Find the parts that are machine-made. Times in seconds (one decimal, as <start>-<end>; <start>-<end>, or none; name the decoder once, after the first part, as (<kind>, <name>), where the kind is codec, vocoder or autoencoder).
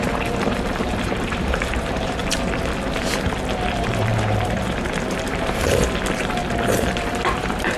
0.0-2.2 (vocoder, BigVGAN v2); 3.7-6.4; 6.9-7.8